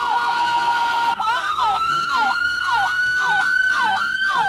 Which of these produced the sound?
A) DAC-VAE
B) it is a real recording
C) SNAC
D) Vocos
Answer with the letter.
C